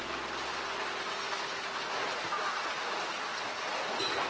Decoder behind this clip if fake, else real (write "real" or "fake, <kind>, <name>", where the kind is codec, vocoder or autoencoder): real